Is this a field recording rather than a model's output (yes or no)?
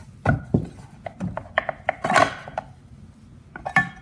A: yes